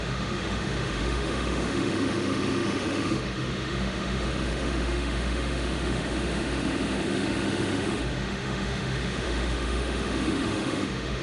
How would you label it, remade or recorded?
remade